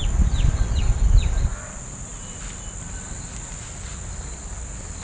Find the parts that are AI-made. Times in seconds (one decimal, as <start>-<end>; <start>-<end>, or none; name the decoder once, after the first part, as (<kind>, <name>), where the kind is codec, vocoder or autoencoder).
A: none